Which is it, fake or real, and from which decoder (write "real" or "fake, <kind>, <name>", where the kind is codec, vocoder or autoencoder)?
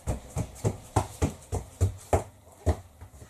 real